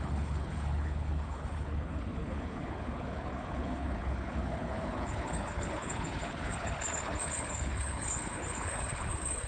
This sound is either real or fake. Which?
fake